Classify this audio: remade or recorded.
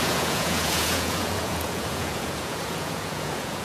remade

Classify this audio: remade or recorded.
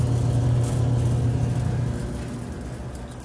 recorded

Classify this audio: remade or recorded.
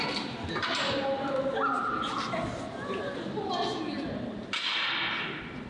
recorded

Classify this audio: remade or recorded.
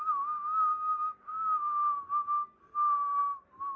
recorded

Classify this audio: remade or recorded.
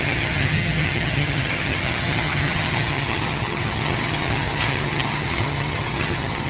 remade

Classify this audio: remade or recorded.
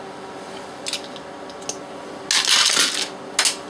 recorded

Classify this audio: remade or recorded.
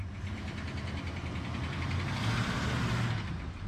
recorded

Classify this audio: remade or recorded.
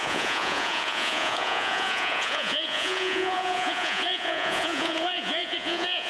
remade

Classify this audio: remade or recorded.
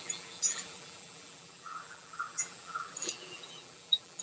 remade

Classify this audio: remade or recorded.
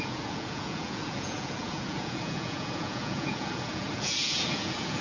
remade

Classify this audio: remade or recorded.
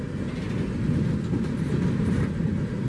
recorded